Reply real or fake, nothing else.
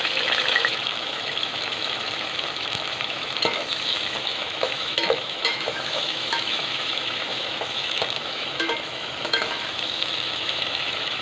fake